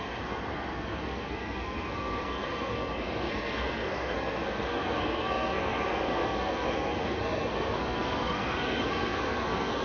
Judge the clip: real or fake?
fake